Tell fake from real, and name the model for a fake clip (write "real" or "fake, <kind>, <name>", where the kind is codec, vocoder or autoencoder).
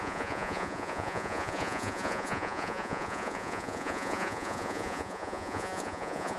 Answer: fake, vocoder, Vocos